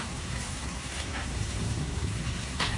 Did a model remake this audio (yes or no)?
yes